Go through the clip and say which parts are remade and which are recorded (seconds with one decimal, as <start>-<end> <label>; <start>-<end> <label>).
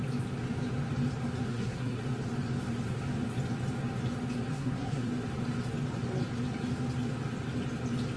0.0-1.5 recorded; 1.5-2.0 remade; 2.0-4.5 recorded; 4.5-5.1 remade; 5.1-8.2 recorded